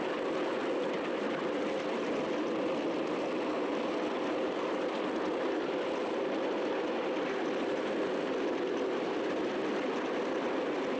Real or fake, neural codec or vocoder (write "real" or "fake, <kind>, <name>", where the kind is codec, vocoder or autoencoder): real